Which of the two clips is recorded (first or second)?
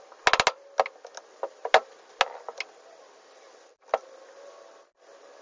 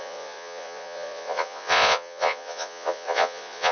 first